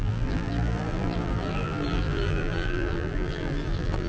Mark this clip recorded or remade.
remade